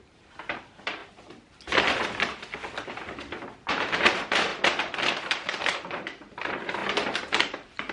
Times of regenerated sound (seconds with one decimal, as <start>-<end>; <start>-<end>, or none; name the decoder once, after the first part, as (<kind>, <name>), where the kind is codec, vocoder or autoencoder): 0.0-1.0 (vocoder, BigVGAN v2); 3.7-4.5; 5.1-7.9